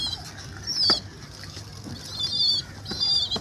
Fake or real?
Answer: real